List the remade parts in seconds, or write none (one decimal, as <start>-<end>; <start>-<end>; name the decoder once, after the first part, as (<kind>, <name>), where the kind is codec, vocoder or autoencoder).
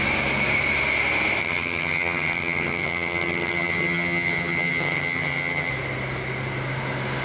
1.4-5.7 (vocoder, HiFi-GAN)